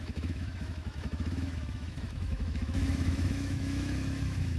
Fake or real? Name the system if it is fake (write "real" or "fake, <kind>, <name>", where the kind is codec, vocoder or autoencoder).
fake, autoencoder, DAC-VAE